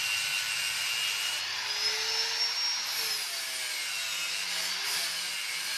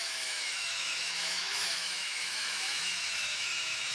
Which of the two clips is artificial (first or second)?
second